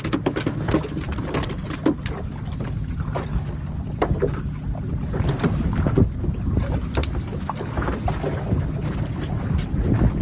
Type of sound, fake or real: real